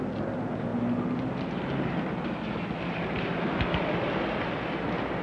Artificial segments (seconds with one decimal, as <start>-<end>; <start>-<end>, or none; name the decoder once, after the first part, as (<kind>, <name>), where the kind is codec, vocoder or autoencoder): none